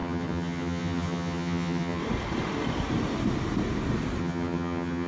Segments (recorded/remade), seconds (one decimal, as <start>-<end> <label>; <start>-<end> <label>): 0.0-2.0 remade; 2.0-4.2 recorded; 4.2-5.1 remade